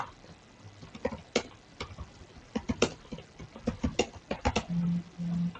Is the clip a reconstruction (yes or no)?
no